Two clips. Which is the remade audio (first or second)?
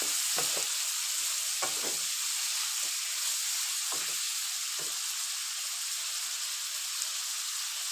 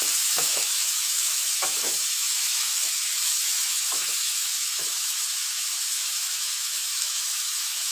second